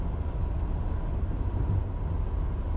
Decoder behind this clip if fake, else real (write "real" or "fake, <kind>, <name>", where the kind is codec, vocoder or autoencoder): real